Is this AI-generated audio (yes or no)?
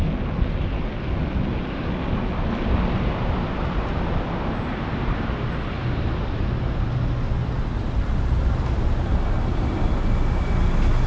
no